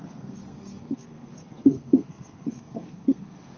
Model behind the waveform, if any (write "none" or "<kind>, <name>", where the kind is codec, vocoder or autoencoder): codec, SNAC